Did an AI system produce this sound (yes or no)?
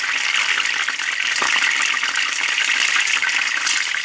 no